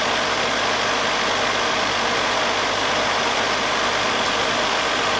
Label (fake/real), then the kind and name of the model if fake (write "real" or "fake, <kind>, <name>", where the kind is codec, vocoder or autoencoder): real